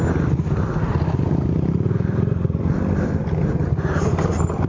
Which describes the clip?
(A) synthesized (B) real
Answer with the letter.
B